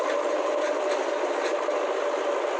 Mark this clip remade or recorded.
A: recorded